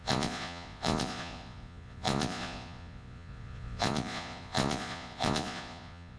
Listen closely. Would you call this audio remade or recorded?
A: remade